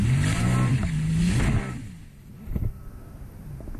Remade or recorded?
recorded